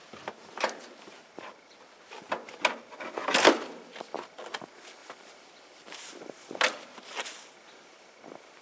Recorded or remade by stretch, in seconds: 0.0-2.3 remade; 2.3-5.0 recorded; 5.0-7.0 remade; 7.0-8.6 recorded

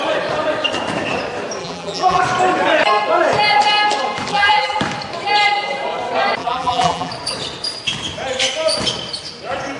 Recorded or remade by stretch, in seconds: 0.0-1.6 recorded; 1.6-2.2 remade; 2.2-4.3 recorded; 4.3-4.8 remade; 4.8-6.4 recorded; 6.4-7.1 remade; 7.1-9.8 recorded

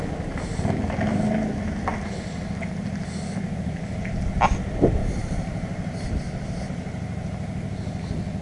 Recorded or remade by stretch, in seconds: 0.0-5.0 recorded; 5.0-6.6 remade; 6.6-8.4 recorded

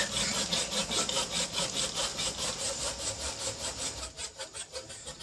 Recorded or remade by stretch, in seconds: 0.0-2.1 recorded; 2.1-5.2 remade

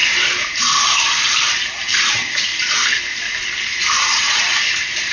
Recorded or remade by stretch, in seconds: 0.0-2.5 remade; 2.5-4.2 recorded; 4.2-5.1 remade

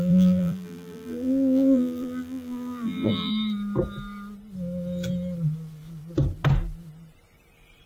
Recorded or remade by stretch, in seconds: 0.0-3.3 remade; 3.3-7.9 recorded

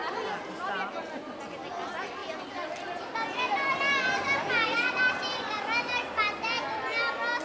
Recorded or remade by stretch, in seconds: 0.0-2.2 recorded; 2.2-6.6 remade; 6.6-7.4 recorded

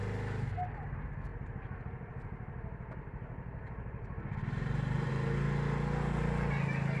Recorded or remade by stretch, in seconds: 0.0-1.3 recorded; 1.3-5.1 remade; 5.1-7.0 recorded